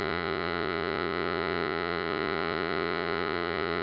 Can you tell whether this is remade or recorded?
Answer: remade